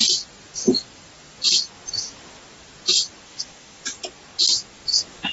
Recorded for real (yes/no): yes